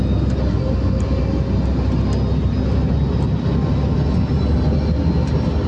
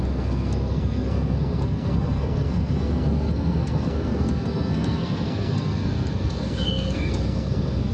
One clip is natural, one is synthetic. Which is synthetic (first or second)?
second